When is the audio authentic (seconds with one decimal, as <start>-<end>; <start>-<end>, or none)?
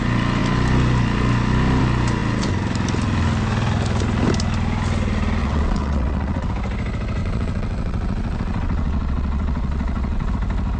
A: 0.0-5.4; 6.5-7.2; 10.3-10.8